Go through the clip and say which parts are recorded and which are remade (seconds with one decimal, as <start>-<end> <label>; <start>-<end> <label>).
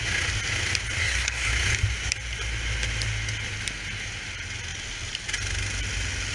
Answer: 0.0-1.0 recorded; 1.0-1.5 remade; 1.5-6.3 recorded